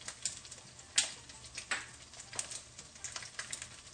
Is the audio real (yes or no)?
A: yes